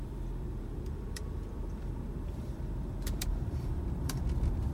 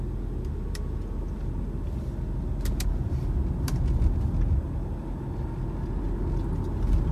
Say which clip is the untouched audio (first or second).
second